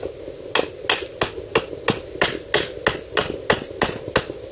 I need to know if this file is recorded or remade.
recorded